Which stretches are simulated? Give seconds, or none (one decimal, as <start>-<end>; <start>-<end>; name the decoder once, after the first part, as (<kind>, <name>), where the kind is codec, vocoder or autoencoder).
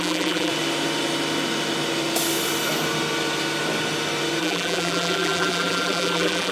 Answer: 0.0-0.5 (vocoder, BigVGAN v2); 4.4-6.5